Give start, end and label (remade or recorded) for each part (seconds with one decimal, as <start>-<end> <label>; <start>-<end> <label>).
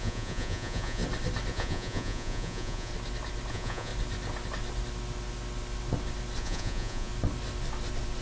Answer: 0.0-1.0 remade; 1.0-1.5 recorded; 1.5-2.9 remade; 2.9-3.5 recorded; 3.5-3.9 remade; 3.9-6.4 recorded; 6.4-7.1 remade; 7.1-8.2 recorded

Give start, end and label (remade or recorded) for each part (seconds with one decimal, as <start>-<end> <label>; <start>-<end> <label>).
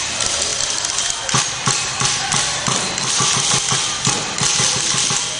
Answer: 0.0-5.4 recorded